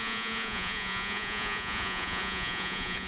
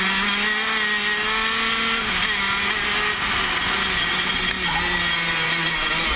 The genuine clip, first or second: second